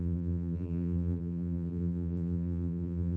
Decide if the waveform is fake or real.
fake